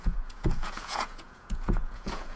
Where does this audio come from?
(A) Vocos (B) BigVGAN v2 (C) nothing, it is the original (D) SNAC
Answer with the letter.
A